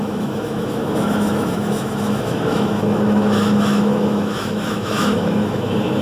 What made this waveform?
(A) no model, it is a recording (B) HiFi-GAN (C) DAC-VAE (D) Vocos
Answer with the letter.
C